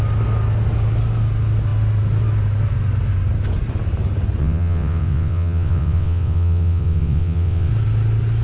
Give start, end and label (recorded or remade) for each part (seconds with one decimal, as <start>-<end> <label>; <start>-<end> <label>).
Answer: 0.0-4.4 recorded; 4.4-7.7 remade; 7.7-8.4 recorded